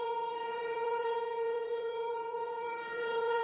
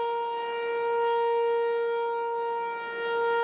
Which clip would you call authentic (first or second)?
second